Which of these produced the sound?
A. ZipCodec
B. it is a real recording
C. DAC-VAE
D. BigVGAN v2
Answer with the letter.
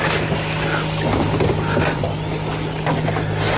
B